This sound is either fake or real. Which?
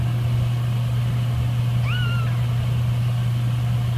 real